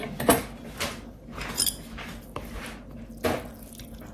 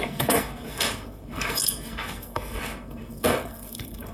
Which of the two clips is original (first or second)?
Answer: first